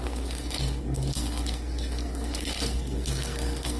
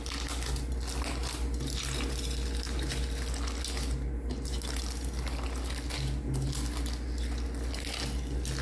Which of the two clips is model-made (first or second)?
first